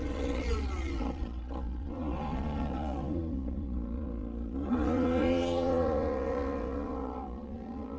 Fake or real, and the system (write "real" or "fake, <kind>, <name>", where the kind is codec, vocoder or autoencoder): fake, vocoder, Vocos